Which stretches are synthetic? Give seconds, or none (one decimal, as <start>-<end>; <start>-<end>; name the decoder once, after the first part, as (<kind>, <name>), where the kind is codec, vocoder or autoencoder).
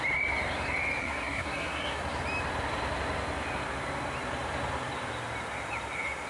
1.0-2.0 (codec, SNAC)